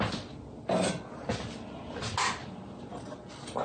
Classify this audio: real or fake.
real